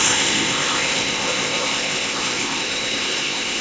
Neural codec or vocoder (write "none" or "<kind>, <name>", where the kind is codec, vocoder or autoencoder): codec, ZipCodec